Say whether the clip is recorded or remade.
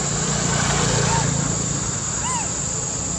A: recorded